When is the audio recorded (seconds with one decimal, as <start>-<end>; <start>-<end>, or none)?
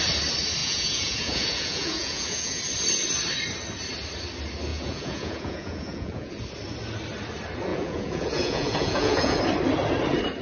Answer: 0.0-0.6; 2.6-4.7; 6.3-7.7; 9.4-10.4